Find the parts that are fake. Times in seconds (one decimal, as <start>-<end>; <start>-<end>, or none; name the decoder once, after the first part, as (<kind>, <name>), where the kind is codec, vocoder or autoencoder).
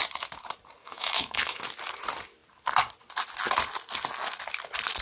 0.8-1.6 (autoencoder, DAC-VAE)